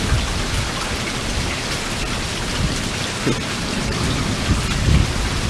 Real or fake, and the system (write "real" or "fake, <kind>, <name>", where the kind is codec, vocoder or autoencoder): real